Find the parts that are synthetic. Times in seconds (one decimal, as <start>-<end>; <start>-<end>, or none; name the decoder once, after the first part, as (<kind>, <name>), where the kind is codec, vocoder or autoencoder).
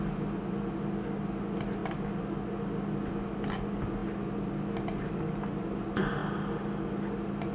none